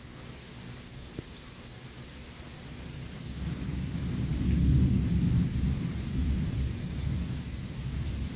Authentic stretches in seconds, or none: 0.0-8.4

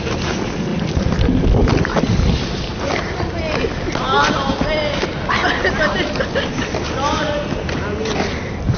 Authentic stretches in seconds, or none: 0.0-8.8

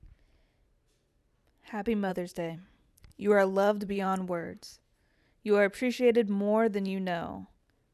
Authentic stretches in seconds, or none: 0.0-2.1; 5.7-7.9

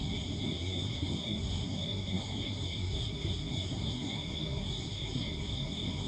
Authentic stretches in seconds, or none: none

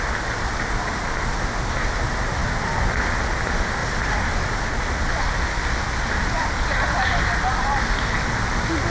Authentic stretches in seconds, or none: 0.0-2.4; 2.9-3.8; 4.6-8.9

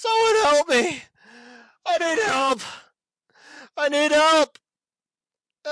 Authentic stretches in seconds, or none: 0.0-1.6; 2.5-5.7

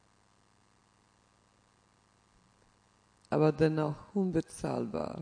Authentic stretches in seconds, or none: 0.0-5.2